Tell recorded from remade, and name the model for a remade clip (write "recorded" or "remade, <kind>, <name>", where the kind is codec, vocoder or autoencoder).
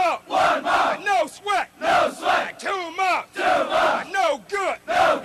remade, vocoder, BigVGAN v2